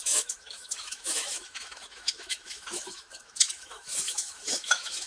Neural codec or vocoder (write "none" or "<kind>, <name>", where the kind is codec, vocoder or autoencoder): autoencoder, DAC-VAE